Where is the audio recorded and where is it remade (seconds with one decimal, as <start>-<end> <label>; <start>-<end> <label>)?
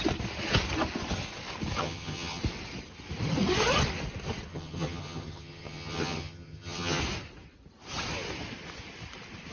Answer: 0.0-1.8 recorded; 1.8-2.4 remade; 2.4-4.5 recorded; 4.5-7.0 remade; 7.0-9.5 recorded